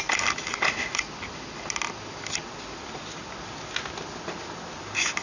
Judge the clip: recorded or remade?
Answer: recorded